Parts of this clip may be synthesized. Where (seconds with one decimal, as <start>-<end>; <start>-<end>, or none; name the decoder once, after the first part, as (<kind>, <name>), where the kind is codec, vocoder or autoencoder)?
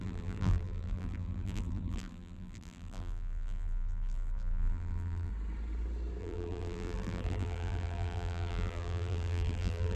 0.0-5.3 (vocoder, BigVGAN v2); 6.2-10.0